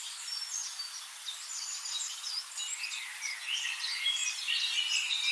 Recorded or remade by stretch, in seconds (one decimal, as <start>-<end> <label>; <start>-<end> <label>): 0.0-5.3 recorded